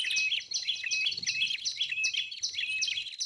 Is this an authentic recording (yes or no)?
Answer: yes